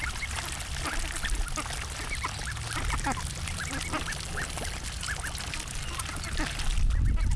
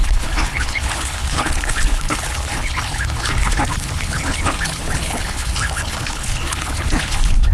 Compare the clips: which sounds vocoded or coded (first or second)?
second